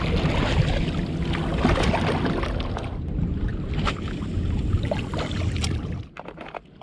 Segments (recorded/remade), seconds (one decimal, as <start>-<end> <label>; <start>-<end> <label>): 0.0-6.8 recorded